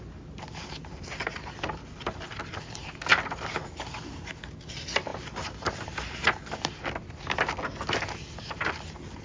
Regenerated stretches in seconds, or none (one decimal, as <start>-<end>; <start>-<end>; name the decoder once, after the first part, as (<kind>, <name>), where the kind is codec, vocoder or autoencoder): none